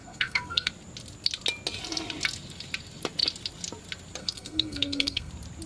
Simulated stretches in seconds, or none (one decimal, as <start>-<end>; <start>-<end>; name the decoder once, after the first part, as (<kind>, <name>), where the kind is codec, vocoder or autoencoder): 0.0-0.7 (codec, SNAC); 4.2-5.3